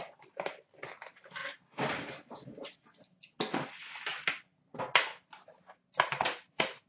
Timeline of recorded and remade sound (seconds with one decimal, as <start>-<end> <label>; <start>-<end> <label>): 0.0-6.9 recorded